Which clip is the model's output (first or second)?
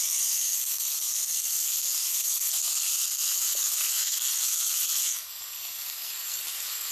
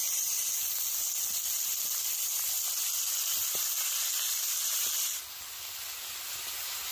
first